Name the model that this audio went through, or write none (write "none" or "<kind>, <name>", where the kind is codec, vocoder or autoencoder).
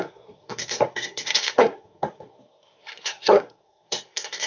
codec, SNAC